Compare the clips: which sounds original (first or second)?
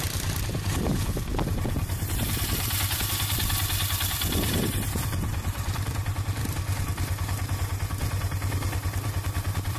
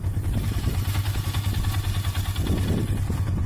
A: second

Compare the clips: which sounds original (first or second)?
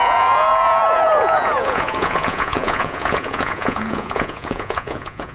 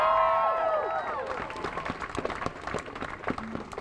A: second